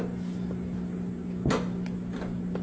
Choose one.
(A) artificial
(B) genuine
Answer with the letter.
B